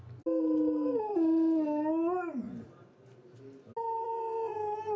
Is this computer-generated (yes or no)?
no